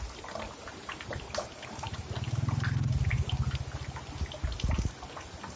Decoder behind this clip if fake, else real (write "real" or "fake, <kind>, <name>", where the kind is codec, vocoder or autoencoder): real